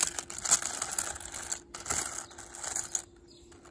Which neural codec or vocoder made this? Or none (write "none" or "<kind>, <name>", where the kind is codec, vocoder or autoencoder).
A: none